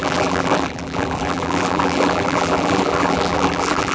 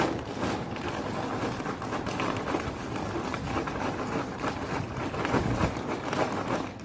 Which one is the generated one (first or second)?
first